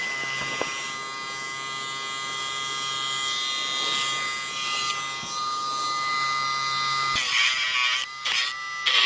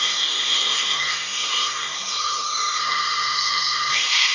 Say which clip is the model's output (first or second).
second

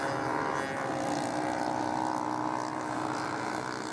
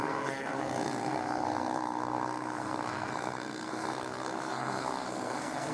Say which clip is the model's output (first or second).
second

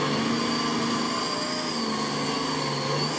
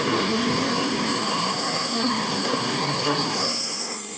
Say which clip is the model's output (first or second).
second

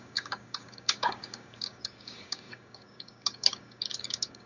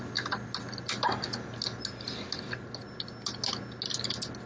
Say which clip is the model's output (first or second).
first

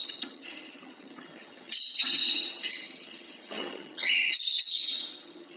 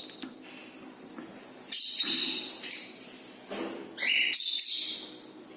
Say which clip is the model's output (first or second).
first